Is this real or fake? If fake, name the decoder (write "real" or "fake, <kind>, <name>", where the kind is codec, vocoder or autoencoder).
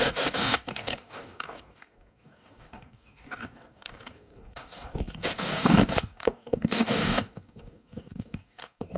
fake, codec, DAC